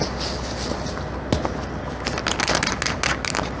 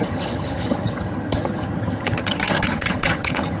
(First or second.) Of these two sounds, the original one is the first